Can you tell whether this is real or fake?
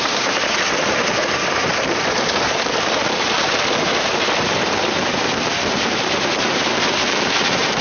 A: fake